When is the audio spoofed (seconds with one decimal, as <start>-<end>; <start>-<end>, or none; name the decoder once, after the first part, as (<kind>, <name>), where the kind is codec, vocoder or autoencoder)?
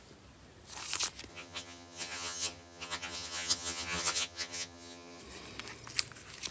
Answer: 1.3-5.2 (vocoder, HiFi-GAN)